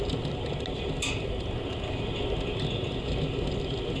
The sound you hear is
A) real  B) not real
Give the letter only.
A